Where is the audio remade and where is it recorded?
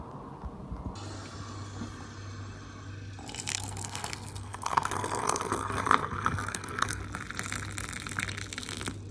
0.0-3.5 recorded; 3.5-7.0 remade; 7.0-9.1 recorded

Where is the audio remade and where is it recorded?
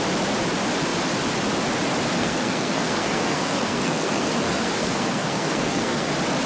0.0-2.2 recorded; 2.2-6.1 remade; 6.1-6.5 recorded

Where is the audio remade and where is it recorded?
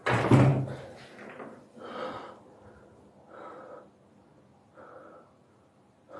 0.0-6.2 recorded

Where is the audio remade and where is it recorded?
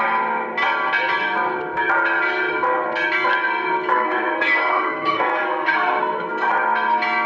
0.0-3.9 recorded; 3.9-6.5 remade; 6.5-7.3 recorded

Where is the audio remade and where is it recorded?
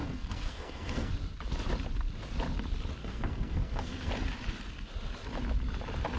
0.0-1.1 remade; 1.1-3.0 recorded; 3.0-4.1 remade; 4.1-6.2 recorded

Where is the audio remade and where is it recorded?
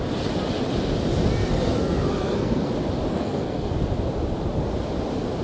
0.0-1.4 recorded; 1.4-2.7 remade; 2.7-3.1 recorded; 3.1-3.7 remade; 3.7-5.4 recorded